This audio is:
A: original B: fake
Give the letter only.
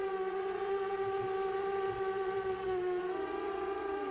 B